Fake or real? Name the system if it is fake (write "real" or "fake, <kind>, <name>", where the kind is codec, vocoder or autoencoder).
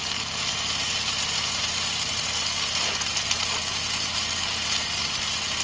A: real